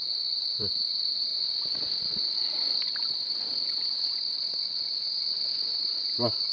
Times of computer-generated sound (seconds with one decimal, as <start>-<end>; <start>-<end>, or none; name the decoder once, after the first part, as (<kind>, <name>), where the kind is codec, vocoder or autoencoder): none